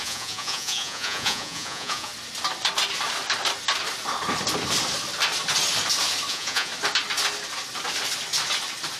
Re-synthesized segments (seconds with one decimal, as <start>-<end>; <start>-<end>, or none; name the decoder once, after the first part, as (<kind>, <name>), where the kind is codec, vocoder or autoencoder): 0.0-2.1 (vocoder, Vocos); 6.3-6.7

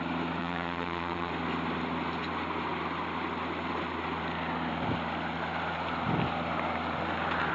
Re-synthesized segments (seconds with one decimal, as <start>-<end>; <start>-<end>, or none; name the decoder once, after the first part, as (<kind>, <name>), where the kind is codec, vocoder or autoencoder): 0.4-1.3 (vocoder, Vocos)

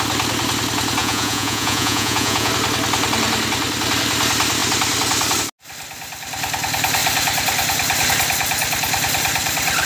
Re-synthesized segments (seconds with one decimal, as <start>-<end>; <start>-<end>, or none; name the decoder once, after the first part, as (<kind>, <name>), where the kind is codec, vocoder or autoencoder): 1.0-2.5 (vocoder, Vocos)

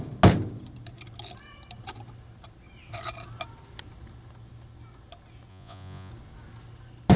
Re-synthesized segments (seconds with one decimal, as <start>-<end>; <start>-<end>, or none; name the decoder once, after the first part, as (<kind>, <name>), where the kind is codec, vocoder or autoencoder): 5.5-6.1 (vocoder, Vocos)

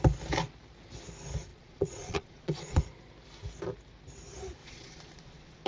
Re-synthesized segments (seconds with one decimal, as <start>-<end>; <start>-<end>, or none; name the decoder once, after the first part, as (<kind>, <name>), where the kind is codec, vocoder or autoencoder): 1.5-2.8 (vocoder, Vocos); 4.6-5.7

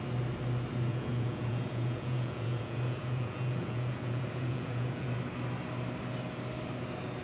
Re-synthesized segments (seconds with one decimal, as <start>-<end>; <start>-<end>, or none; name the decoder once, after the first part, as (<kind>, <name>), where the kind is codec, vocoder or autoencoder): 0.9-5.1 (vocoder, Vocos)